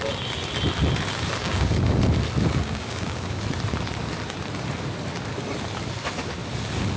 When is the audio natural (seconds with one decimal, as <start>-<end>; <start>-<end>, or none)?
0.0-1.4; 2.0-2.6; 3.4-7.0